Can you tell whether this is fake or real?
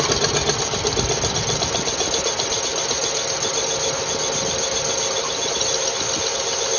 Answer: real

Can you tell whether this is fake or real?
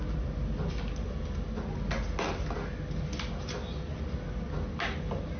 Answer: real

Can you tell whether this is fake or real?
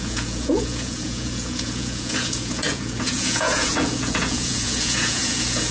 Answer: fake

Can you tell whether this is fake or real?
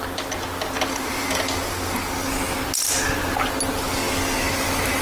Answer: real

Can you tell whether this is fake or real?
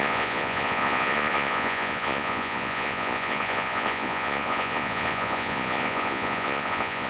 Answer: fake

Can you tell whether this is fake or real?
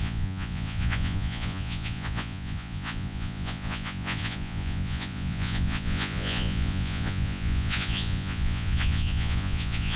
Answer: fake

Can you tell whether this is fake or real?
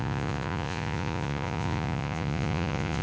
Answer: fake